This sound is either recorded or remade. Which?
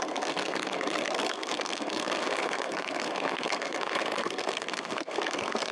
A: remade